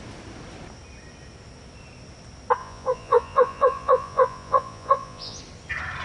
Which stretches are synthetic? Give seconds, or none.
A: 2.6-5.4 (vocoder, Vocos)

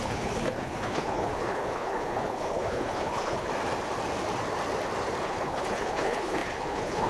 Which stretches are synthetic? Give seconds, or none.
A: 0.0-3.5 (codec, HILCodec); 5.2-7.1